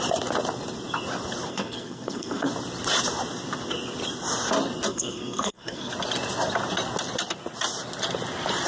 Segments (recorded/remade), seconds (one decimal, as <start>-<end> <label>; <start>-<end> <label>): 0.0-1.5 recorded; 1.5-2.5 remade; 2.5-4.9 recorded; 4.9-5.9 remade; 5.9-8.7 recorded